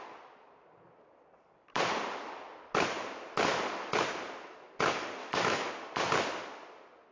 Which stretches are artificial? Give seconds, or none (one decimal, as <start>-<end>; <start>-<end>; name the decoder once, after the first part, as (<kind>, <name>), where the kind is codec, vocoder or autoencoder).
5.2-5.7 (autoencoder, DAC-VAE)